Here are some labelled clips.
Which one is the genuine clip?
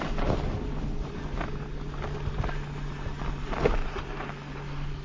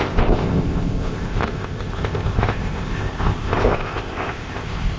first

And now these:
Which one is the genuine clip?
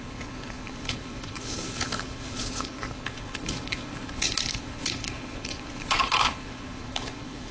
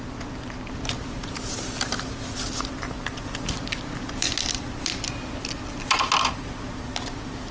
second